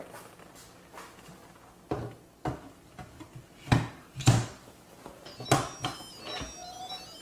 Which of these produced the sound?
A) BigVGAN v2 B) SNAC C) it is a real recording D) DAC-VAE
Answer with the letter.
C